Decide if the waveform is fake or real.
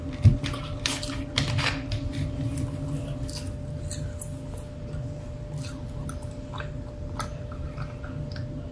real